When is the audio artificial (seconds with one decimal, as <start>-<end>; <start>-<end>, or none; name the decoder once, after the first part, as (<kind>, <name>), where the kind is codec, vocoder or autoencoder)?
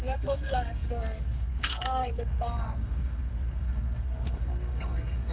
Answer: 0.0-5.3 (codec, SNAC)